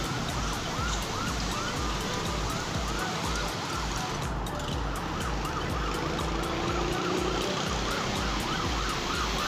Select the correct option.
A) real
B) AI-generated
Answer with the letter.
A